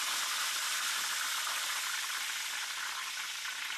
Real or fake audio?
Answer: real